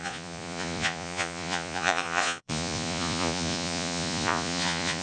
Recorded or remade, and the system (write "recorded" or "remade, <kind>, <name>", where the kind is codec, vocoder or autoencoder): remade, vocoder, Vocos